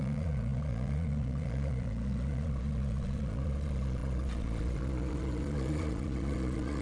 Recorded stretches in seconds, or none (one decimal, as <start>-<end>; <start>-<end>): none